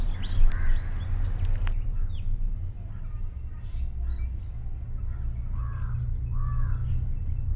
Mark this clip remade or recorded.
recorded